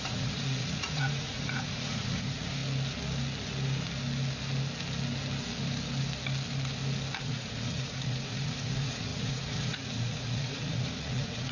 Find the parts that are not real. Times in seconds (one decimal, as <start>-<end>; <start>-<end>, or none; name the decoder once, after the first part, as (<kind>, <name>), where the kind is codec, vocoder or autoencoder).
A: 0.0-2.6 (vocoder, Vocos); 7.2-11.5